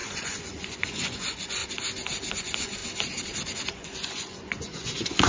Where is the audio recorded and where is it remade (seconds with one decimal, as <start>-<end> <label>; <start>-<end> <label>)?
0.0-1.6 remade; 1.6-2.4 recorded; 2.4-2.8 remade; 2.8-3.7 recorded; 3.7-5.3 remade